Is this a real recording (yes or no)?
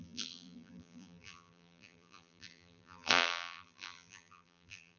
no